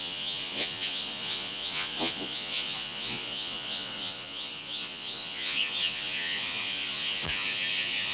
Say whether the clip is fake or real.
fake